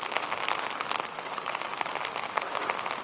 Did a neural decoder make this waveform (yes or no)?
no